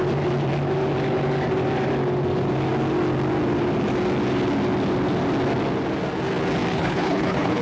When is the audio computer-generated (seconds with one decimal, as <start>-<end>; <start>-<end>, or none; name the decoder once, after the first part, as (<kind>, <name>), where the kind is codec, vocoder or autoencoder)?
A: 6.7-7.6 (codec, HILCodec)